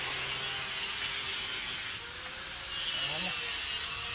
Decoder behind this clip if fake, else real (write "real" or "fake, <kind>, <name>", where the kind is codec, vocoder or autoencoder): real